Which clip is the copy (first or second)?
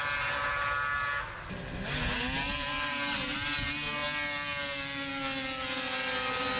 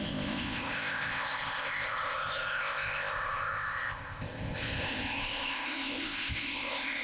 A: second